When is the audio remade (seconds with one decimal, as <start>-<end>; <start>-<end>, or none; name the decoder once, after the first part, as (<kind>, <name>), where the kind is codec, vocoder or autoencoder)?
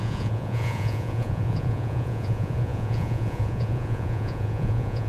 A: 0.0-5.1 (vocoder, Vocos)